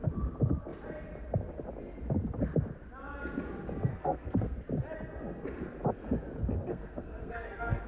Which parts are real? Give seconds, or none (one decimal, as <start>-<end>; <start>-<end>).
0.0-3.9; 4.6-6.7